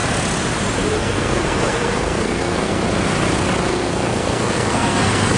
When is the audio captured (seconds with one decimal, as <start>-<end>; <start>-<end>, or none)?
0.0-1.0; 2.8-3.7